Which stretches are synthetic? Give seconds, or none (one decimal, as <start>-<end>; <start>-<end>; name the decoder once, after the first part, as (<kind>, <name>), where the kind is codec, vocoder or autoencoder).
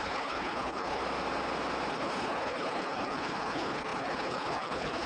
0.0-1.0 (codec, HILCodec); 1.9-5.1